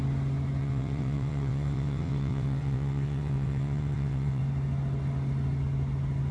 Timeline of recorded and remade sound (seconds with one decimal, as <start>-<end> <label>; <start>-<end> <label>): 0.0-0.6 recorded; 0.6-4.4 remade; 4.4-6.3 recorded